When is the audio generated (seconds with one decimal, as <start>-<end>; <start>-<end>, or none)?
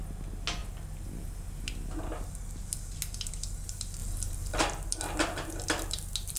none